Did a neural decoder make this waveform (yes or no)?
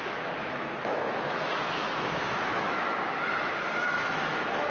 yes